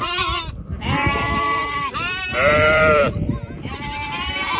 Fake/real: fake